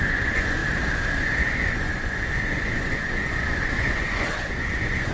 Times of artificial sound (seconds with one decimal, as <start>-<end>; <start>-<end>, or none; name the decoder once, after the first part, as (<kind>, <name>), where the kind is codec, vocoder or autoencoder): 0.0-0.6 (vocoder, Vocos); 1.2-5.1